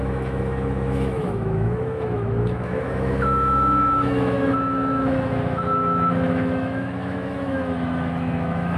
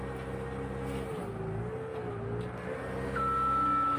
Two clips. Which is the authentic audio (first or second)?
second